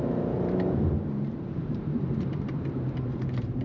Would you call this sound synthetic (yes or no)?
yes